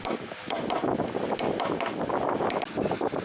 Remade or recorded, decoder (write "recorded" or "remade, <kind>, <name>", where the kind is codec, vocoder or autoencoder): recorded